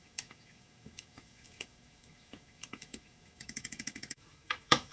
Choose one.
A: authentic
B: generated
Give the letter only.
B